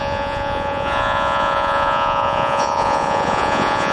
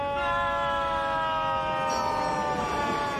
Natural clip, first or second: second